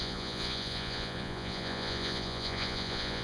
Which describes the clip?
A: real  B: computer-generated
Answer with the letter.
B